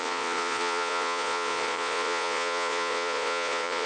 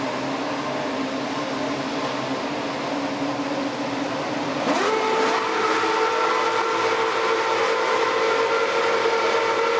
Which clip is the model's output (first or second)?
first